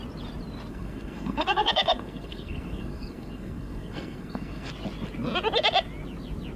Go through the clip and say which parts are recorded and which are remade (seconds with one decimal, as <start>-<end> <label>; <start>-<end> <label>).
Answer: 0.0-0.7 recorded; 0.7-4.7 remade; 4.7-6.6 recorded